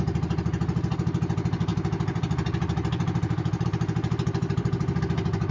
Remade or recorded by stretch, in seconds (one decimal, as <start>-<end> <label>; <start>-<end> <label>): 0.0-1.7 recorded; 1.7-5.0 remade; 5.0-5.5 recorded